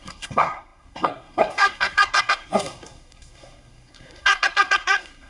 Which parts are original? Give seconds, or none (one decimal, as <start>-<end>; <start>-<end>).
none